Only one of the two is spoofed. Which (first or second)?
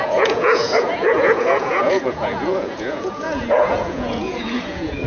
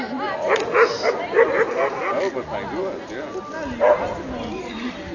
first